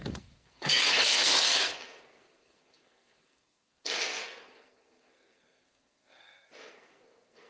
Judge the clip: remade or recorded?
remade